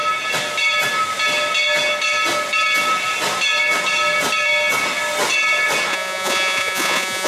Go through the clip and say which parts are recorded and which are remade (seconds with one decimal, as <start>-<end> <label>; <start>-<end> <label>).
0.0-5.9 recorded; 5.9-7.3 remade